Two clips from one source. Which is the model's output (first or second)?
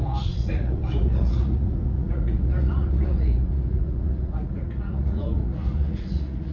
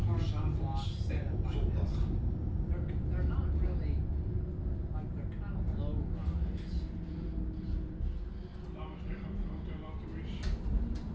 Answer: first